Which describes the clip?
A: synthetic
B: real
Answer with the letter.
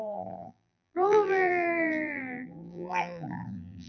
A